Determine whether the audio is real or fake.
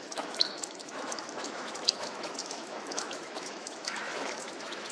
fake